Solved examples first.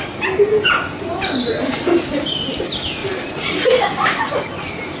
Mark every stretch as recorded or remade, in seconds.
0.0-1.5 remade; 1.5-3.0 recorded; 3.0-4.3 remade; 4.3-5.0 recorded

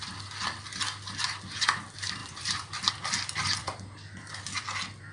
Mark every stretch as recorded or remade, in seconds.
0.0-2.2 recorded; 2.2-2.9 remade; 2.9-5.1 recorded

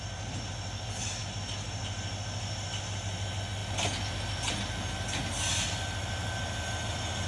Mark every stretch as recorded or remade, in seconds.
0.0-7.3 recorded

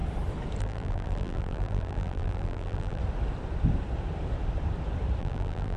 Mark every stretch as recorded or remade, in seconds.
0.0-0.6 recorded; 0.6-3.0 remade; 3.0-5.2 recorded; 5.2-5.8 remade

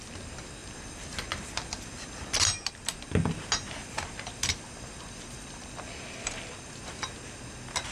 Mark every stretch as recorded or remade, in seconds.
0.0-0.6 recorded; 0.6-2.7 remade; 2.7-3.8 recorded; 3.8-6.9 remade; 6.9-7.9 recorded

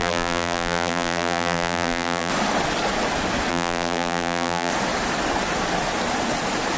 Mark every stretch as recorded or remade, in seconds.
0.0-2.3 remade; 2.3-3.5 recorded; 3.5-4.7 remade; 4.7-6.8 recorded

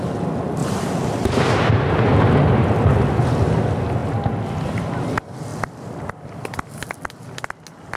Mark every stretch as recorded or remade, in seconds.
0.0-0.6 recorded; 0.6-1.7 remade; 1.7-8.0 recorded

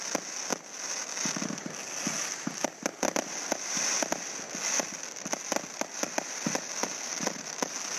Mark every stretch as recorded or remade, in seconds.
0.0-6.8 recorded; 6.8-7.4 remade; 7.4-8.0 recorded